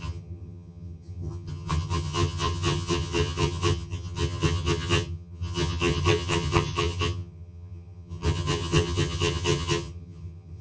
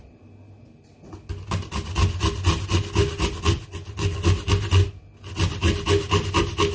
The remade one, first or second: first